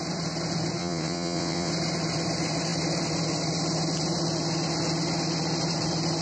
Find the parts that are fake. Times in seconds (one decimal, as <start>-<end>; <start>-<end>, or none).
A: 0.8-1.7